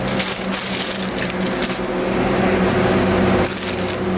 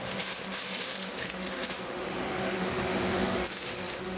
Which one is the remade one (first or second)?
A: second